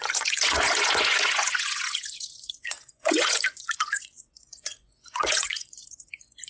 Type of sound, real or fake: fake